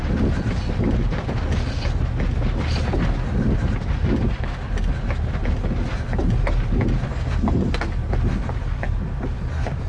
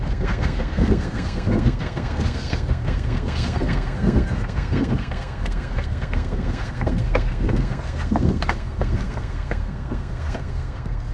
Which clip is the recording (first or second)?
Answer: first